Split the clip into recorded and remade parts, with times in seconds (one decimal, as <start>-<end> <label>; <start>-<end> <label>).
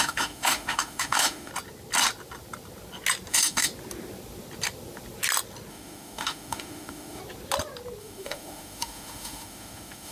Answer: 0.0-1.5 remade; 1.5-3.3 recorded; 3.3-3.7 remade; 3.7-5.7 recorded; 5.7-7.2 remade; 7.2-8.0 recorded; 8.0-10.1 remade